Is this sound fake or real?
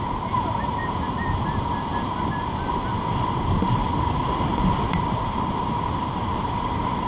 real